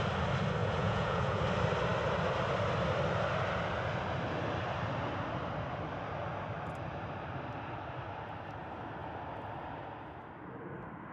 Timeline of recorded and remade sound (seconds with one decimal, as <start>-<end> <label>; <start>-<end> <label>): 0.0-0.6 recorded; 0.6-1.4 remade; 1.4-11.1 recorded

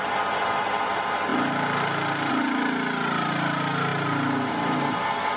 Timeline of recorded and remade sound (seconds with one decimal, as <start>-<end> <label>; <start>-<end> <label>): 0.0-5.4 recorded

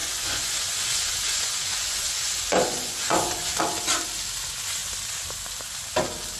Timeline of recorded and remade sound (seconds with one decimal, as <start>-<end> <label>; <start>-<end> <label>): 0.0-3.6 remade; 3.6-6.4 recorded

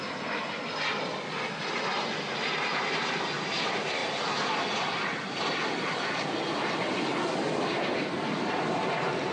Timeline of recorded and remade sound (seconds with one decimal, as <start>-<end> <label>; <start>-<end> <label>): 0.0-9.3 recorded

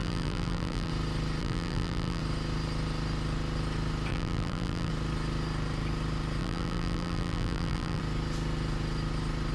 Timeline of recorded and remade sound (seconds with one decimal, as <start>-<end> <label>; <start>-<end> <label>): 0.0-0.9 remade; 0.9-1.4 recorded; 1.4-2.2 remade; 2.2-4.1 recorded; 4.1-4.9 remade; 4.9-6.4 recorded; 6.4-8.0 remade; 8.0-9.5 recorded

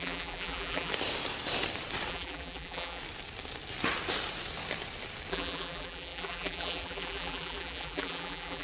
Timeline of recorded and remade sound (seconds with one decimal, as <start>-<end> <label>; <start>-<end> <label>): 0.0-0.9 remade; 0.9-2.1 recorded; 2.1-3.0 remade; 3.0-5.3 recorded; 5.3-8.6 remade

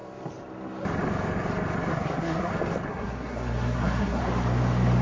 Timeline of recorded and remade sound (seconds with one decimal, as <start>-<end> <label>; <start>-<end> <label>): 0.0-1.9 recorded; 1.9-2.5 remade; 2.5-2.9 recorded; 2.9-4.2 remade; 4.2-5.0 recorded

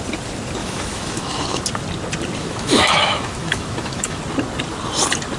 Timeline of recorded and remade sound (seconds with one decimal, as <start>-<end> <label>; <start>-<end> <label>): 0.0-0.6 recorded; 0.6-1.6 remade; 1.6-2.4 recorded; 2.4-4.2 remade; 4.2-5.4 recorded